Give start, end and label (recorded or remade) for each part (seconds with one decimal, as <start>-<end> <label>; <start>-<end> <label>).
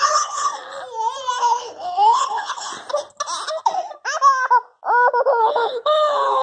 0.0-0.5 remade; 0.5-1.4 recorded; 1.4-2.7 remade; 2.7-5.4 recorded; 5.4-6.4 remade